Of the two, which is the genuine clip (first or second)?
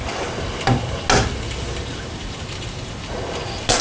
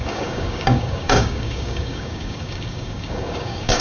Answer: first